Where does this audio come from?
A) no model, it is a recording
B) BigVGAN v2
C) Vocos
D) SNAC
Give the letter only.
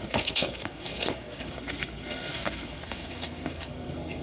D